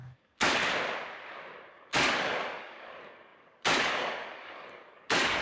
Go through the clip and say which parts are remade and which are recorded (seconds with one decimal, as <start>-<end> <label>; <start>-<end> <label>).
0.0-0.6 remade; 0.6-1.7 recorded; 1.7-5.4 remade